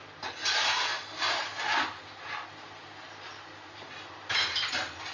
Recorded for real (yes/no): yes